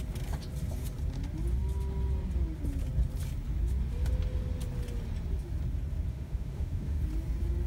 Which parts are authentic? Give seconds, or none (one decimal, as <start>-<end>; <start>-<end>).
0.0-6.1; 7.0-7.7